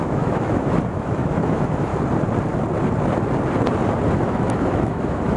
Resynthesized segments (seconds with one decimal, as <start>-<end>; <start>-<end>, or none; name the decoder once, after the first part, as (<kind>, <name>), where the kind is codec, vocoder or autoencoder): 0.0-1.9 (autoencoder, DAC-VAE); 4.1-5.4